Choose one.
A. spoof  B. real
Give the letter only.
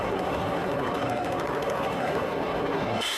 A